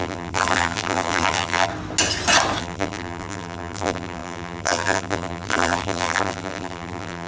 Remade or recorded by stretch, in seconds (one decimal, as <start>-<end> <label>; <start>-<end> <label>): 0.0-1.7 remade; 1.7-2.6 recorded; 2.6-7.3 remade